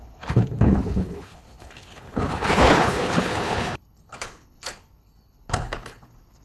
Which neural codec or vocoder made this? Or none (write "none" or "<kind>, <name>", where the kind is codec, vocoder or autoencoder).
codec, HILCodec